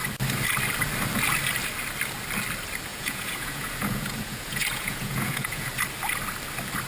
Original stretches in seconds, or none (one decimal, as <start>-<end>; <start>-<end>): 0.0-2.9; 5.7-6.9